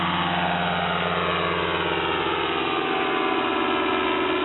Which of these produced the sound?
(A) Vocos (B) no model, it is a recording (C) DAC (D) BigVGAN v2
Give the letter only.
B